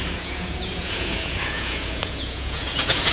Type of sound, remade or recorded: remade